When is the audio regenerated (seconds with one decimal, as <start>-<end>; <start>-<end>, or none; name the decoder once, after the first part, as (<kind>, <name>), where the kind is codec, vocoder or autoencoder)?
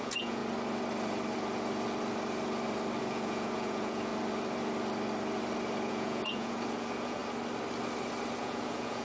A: 0.0-0.4 (vocoder, Vocos); 3.0-4.1; 5.9-7.2; 8.4-9.0